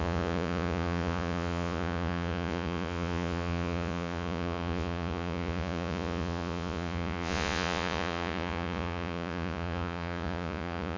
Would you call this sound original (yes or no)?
no